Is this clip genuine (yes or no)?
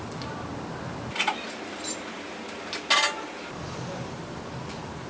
yes